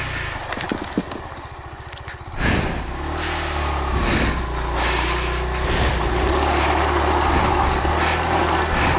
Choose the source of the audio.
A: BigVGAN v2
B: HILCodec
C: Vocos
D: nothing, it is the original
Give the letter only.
D